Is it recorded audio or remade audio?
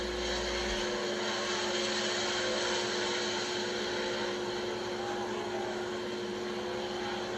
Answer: recorded